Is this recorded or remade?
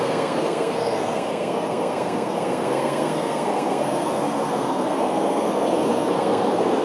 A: remade